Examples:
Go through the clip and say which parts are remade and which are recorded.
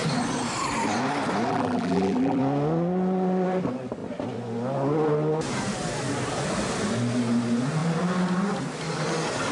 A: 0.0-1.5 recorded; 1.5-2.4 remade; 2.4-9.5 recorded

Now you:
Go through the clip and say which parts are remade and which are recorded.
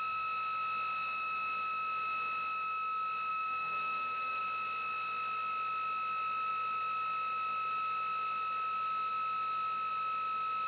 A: 0.0-3.3 recorded; 3.3-4.4 remade; 4.4-10.7 recorded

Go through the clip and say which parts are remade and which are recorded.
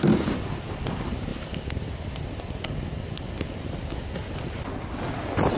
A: 0.0-5.6 recorded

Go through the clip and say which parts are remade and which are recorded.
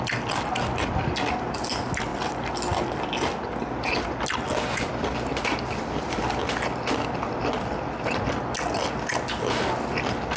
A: 0.0-10.4 recorded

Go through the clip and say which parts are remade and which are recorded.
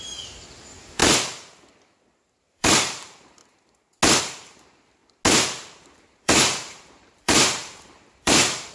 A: 0.0-1.0 remade; 1.0-2.3 recorded; 2.3-3.4 remade; 3.4-4.2 recorded; 4.2-5.0 remade; 5.0-6.2 recorded; 6.2-8.7 remade